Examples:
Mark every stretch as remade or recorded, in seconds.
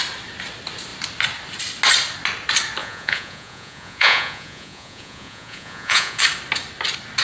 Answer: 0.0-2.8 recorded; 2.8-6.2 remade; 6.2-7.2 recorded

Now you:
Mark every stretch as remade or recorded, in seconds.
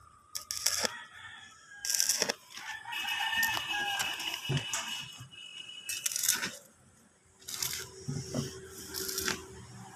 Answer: 0.0-10.0 recorded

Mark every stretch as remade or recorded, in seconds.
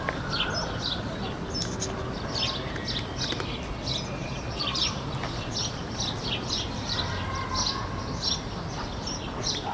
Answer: 0.0-9.7 recorded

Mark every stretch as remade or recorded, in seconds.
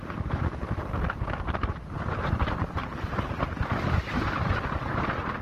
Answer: 0.0-2.8 remade; 2.8-3.4 recorded; 3.4-5.4 remade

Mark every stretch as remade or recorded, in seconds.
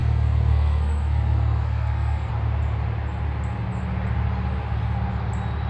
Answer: 0.0-2.3 remade; 2.3-5.7 recorded